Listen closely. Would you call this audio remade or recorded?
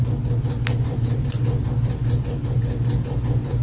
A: recorded